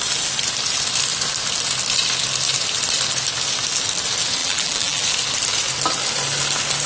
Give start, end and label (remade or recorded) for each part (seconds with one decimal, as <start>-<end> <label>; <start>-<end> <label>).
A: 0.0-4.4 recorded; 4.4-5.0 remade; 5.0-6.9 recorded